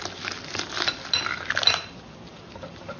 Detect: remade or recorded recorded